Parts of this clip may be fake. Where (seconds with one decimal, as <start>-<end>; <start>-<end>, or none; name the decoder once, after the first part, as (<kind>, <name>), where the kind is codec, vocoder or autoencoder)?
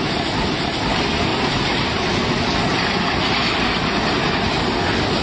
none